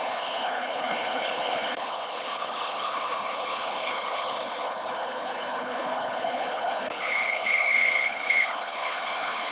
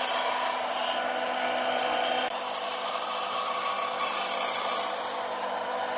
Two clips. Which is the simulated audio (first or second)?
first